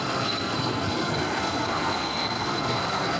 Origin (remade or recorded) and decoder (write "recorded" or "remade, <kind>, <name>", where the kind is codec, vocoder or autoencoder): remade, codec, SNAC